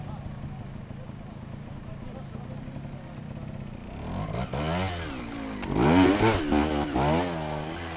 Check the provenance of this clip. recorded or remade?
recorded